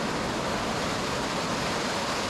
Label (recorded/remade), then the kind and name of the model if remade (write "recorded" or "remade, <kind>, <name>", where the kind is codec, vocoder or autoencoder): recorded